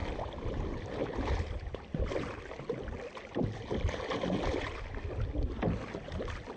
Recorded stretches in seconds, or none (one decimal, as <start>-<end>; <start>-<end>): 0.0-6.6